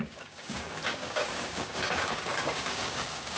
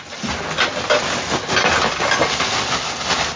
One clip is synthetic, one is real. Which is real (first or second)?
second